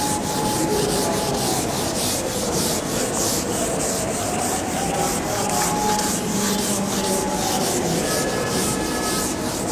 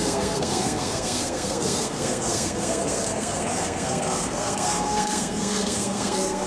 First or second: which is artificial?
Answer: second